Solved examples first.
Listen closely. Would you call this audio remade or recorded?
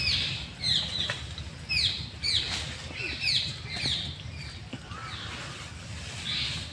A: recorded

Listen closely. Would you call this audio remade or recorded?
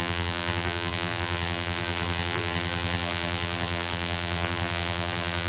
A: remade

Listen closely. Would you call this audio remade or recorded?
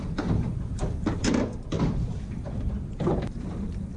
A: remade